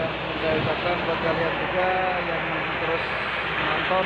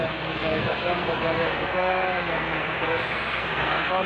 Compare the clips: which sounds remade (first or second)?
second